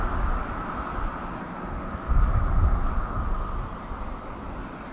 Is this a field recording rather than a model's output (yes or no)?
yes